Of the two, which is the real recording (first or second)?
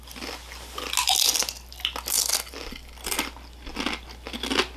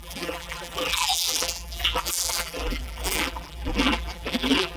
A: first